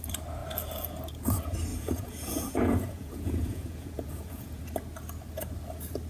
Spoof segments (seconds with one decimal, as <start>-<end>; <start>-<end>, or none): 1.7-4.6